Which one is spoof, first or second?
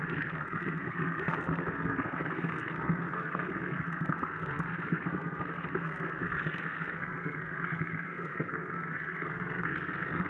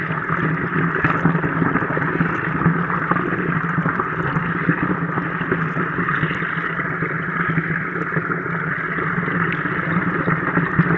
first